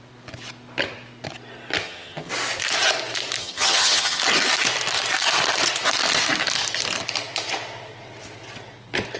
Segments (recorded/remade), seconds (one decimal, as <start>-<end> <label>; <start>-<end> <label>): 0.0-1.8 recorded; 1.8-2.3 remade; 2.3-3.4 recorded; 3.4-4.2 remade; 4.2-9.2 recorded